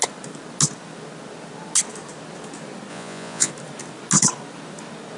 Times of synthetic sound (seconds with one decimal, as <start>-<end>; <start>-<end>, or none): 2.9-3.5